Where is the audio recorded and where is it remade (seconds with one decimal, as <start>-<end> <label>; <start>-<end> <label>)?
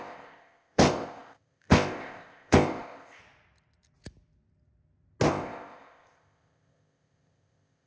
0.0-3.2 remade; 3.2-5.3 recorded; 5.3-7.9 remade